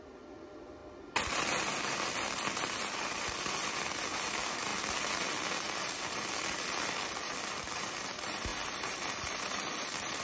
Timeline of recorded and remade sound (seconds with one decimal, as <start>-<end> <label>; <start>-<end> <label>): 0.0-0.8 remade; 0.8-1.8 recorded; 1.8-4.7 remade; 4.7-6.0 recorded; 6.0-10.2 remade